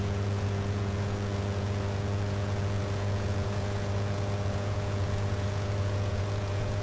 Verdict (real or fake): fake